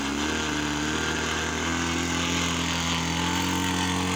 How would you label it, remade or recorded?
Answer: recorded